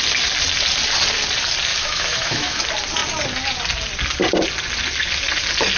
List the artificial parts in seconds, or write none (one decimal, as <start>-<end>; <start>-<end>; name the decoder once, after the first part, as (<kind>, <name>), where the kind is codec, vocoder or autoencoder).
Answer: 1.7-2.6 (autoencoder, DAC-VAE)